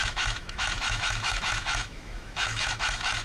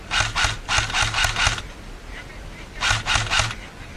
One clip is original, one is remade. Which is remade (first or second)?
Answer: first